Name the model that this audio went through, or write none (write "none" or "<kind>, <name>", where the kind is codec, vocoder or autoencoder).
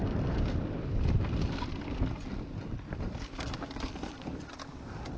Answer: none